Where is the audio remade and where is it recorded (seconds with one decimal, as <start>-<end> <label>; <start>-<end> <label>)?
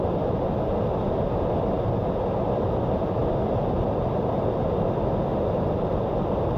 0.0-3.2 recorded; 3.2-4.6 remade; 4.6-5.3 recorded; 5.3-5.8 remade; 5.8-6.6 recorded